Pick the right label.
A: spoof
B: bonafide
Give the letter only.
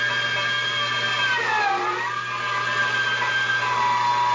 B